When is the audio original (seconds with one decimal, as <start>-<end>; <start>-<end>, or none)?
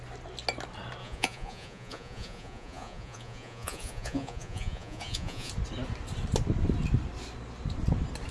0.0-1.0; 5.5-8.3